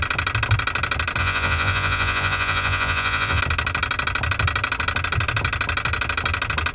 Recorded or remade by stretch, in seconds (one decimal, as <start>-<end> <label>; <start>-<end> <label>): 0.0-1.2 recorded; 1.2-3.4 remade; 3.4-6.7 recorded